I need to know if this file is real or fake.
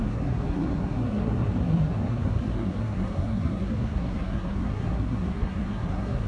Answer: fake